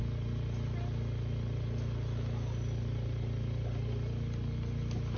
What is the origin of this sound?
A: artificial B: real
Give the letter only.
B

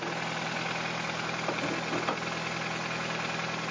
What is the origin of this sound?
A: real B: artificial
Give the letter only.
A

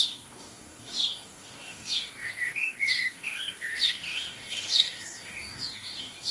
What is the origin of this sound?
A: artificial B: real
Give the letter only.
A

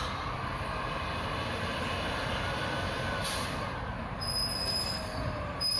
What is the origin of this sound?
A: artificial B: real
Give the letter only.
B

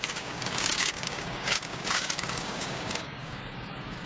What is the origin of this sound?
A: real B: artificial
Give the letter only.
B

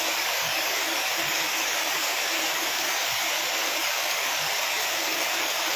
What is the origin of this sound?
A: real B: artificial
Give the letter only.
B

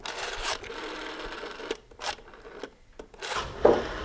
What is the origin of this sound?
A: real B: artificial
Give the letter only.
A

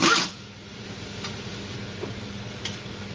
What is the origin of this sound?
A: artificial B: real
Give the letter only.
B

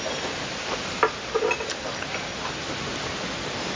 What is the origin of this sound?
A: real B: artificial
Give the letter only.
A